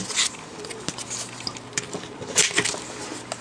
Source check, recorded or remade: recorded